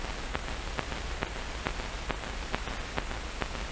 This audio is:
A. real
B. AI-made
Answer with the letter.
A